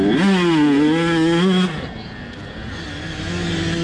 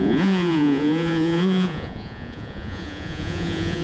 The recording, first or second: first